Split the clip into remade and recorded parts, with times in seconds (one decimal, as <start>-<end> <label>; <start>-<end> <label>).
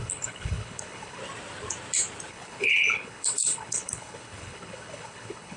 0.0-1.2 remade; 1.2-2.3 recorded; 2.3-5.6 remade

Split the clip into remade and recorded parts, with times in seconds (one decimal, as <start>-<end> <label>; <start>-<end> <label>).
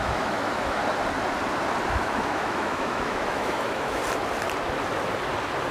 0.0-0.8 remade; 0.8-1.9 recorded; 1.9-4.0 remade; 4.0-5.7 recorded